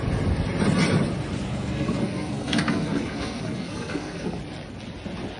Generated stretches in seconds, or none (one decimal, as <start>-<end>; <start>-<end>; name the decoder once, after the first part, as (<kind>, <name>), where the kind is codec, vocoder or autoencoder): 1.5-4.4 (codec, SNAC)